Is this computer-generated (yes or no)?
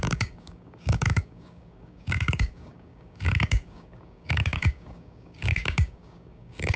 yes